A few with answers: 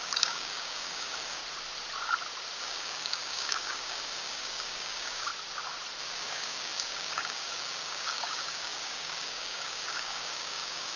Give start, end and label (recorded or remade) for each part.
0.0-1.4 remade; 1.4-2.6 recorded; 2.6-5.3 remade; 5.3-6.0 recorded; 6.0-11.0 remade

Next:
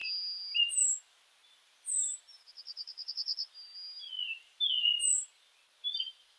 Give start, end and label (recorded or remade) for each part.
0.0-6.4 recorded

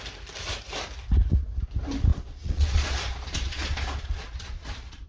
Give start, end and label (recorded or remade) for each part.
0.0-2.1 recorded; 2.1-5.1 remade

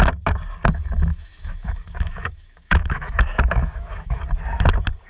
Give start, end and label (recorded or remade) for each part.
0.0-1.1 recorded; 1.1-4.2 remade; 4.2-5.1 recorded

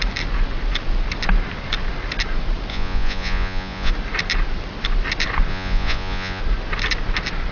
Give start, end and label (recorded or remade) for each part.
0.0-2.7 recorded; 2.7-3.9 remade; 3.9-5.5 recorded; 5.5-6.4 remade; 6.4-7.5 recorded

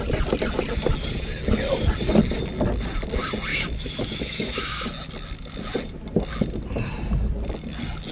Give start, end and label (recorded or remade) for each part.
0.0-3.5 recorded; 3.5-4.9 remade; 4.9-8.1 recorded

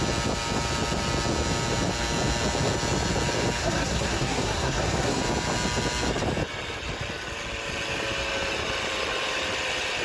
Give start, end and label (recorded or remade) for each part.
0.0-3.6 recorded; 3.6-5.2 remade; 5.2-10.0 recorded